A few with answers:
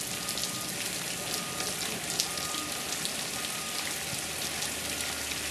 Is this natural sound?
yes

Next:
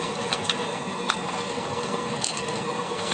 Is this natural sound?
no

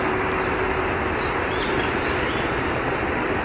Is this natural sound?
yes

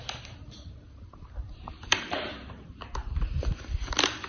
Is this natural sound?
no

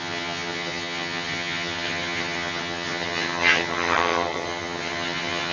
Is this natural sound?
no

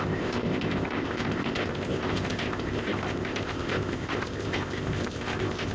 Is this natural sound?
no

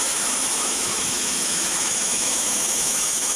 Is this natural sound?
no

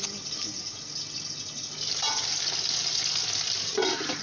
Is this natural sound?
yes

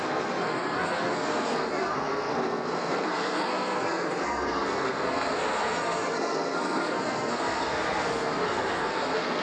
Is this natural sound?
no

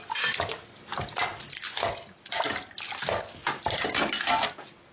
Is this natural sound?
yes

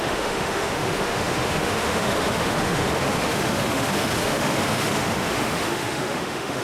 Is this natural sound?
no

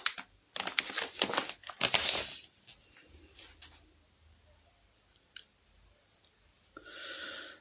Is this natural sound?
yes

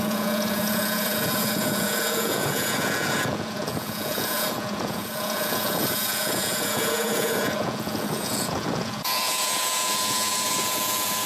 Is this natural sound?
no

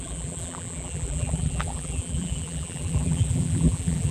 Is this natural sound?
no